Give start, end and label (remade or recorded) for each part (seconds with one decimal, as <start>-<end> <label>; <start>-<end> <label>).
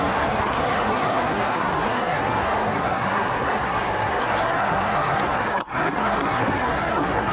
0.0-7.3 remade